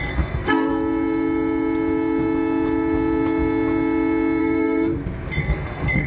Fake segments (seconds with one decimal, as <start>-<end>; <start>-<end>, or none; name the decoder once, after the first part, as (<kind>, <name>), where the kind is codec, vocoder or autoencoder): 0.0-0.7 (codec, SNAC); 4.4-4.9; 5.4-6.1